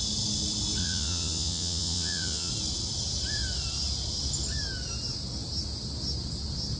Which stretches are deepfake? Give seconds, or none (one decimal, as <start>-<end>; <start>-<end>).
0.8-2.5